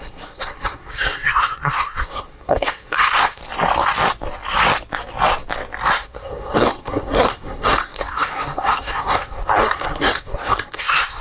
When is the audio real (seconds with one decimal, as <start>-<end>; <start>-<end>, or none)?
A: 3.4-5.9

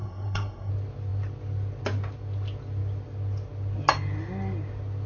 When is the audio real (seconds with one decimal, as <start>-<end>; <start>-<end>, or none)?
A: 0.7-5.1